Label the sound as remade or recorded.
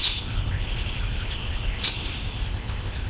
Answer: remade